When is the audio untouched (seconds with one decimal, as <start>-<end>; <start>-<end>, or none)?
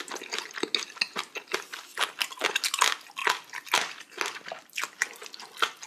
0.0-5.9